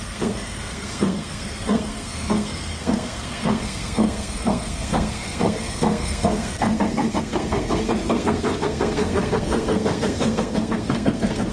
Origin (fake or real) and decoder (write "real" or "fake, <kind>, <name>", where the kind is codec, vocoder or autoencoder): fake, codec, SNAC